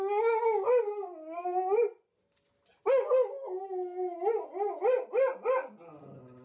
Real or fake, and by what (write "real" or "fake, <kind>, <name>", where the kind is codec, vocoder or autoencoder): real